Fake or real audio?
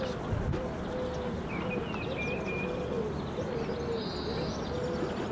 real